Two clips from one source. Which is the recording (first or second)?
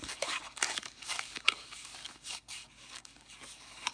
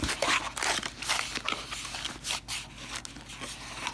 second